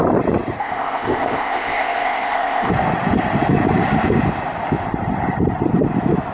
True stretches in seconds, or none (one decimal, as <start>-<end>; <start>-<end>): 0.0-0.6; 2.7-6.3